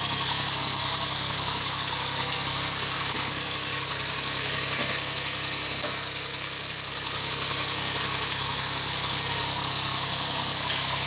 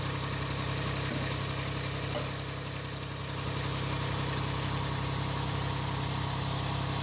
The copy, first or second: first